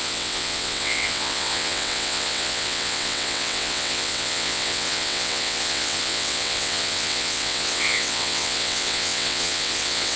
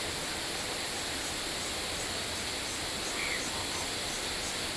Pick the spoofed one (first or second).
first